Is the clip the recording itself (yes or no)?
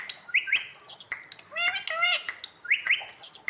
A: yes